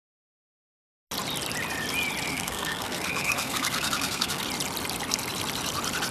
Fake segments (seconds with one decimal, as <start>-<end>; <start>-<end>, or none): 2.3-4.4